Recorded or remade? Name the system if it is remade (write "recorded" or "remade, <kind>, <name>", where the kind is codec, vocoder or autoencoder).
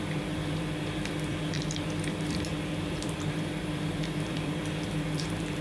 remade, vocoder, BigVGAN v2